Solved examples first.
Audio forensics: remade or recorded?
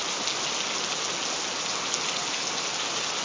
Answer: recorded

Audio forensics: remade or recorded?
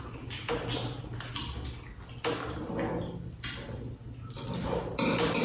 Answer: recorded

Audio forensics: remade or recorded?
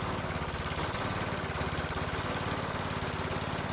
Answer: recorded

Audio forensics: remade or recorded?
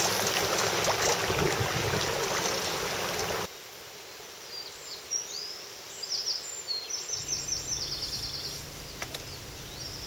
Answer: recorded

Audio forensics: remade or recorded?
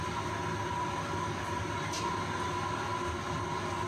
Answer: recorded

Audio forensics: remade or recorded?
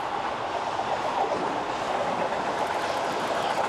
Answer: recorded